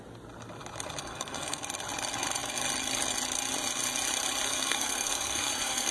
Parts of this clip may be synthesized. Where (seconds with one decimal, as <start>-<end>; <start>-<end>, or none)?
1.0-1.6; 4.5-5.9